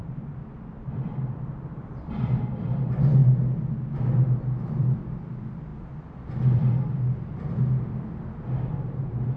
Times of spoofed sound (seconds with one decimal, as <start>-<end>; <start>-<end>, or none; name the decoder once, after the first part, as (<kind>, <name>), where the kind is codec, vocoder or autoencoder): 0.0-3.2 (vocoder, BigVGAN v2); 4.8-9.4